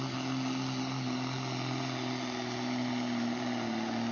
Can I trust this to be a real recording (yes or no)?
yes